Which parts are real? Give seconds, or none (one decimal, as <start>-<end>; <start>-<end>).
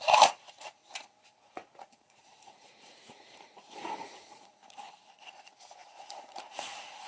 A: 0.8-1.4; 4.6-5.2